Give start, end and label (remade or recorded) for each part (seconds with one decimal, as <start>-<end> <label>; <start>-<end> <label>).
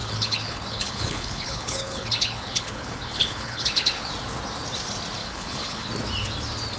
0.0-4.1 remade; 4.1-5.2 recorded; 5.2-5.9 remade; 5.9-6.8 recorded